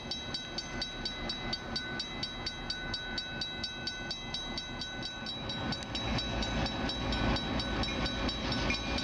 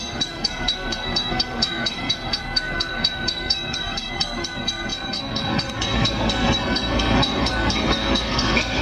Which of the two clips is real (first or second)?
first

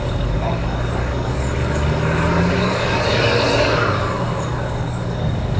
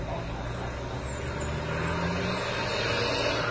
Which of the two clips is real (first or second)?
second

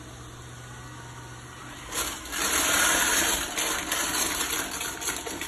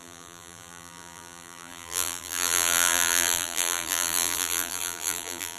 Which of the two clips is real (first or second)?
first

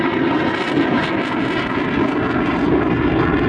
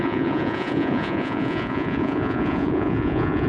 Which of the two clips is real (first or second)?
first